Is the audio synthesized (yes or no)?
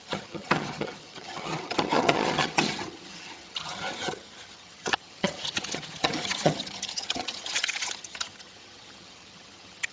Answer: yes